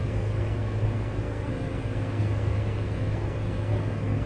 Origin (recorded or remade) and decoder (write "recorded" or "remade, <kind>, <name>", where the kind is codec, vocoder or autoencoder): remade, codec, SNAC